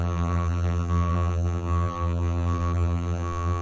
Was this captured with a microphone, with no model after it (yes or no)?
no